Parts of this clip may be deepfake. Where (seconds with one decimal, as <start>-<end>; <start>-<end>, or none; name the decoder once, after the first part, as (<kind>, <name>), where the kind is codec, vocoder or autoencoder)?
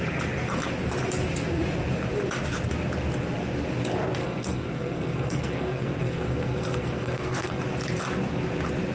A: 4.2-7.6 (codec, SNAC)